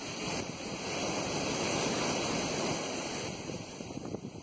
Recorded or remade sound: recorded